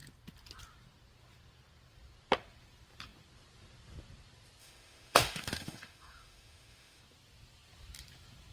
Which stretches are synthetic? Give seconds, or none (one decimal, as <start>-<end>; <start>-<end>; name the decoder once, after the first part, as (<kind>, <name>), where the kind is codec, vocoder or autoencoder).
4.6-7.0 (autoencoder, DAC-VAE)